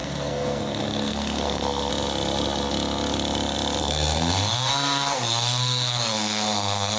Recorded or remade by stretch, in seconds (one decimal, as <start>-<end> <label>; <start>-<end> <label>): 0.0-1.9 remade; 1.9-3.8 recorded; 3.8-7.0 remade